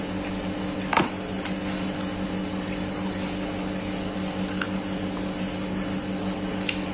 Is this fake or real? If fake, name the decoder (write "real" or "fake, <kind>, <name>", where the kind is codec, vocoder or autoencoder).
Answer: real